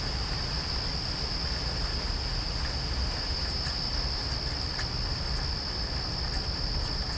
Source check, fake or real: real